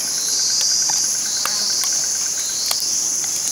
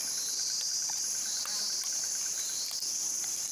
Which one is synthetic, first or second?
second